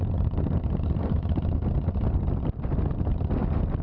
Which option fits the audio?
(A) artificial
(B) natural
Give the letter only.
A